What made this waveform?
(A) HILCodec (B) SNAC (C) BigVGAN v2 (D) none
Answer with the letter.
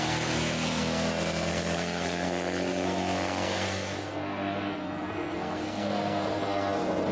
B